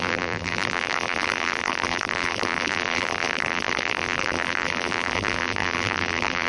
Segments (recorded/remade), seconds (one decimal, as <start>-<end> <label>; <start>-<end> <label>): 0.0-6.5 remade